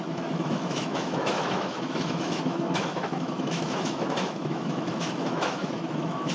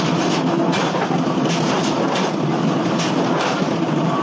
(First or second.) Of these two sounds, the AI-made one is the first